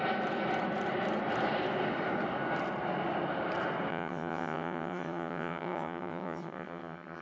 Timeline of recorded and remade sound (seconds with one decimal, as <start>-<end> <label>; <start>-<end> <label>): 0.0-3.9 recorded; 3.9-7.2 remade